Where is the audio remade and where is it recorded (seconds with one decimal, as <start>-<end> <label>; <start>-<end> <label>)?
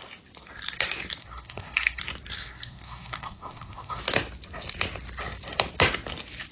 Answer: 0.0-1.2 recorded; 1.2-2.0 remade; 2.0-2.4 recorded; 2.4-4.0 remade; 4.0-6.5 recorded